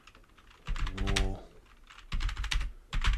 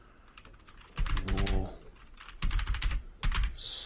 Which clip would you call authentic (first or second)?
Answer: first